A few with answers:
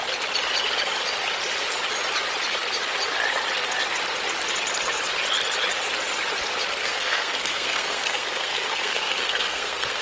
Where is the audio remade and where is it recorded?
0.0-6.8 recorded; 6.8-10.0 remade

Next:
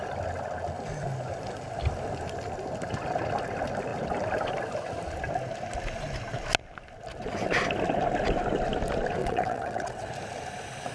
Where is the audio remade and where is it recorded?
0.0-9.2 recorded; 9.2-10.1 remade; 10.1-10.9 recorded

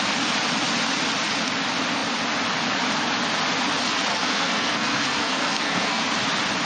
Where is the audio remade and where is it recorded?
0.0-4.1 recorded; 4.1-6.0 remade; 6.0-6.7 recorded

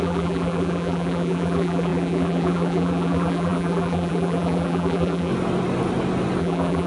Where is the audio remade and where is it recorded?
0.0-5.3 remade; 5.3-6.4 recorded; 6.4-6.9 remade